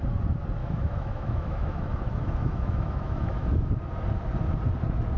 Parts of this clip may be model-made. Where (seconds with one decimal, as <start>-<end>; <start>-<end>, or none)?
0.6-3.7